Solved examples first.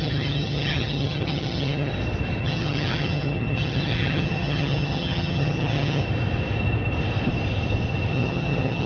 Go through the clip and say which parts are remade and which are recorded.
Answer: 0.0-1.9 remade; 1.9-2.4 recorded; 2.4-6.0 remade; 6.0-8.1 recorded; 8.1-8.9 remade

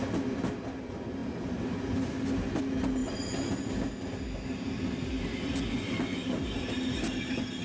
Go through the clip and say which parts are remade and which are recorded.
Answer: 0.0-7.6 recorded

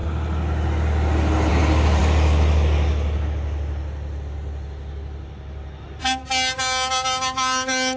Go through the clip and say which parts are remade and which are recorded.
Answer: 0.0-8.0 recorded